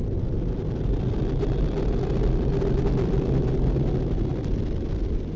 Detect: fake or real real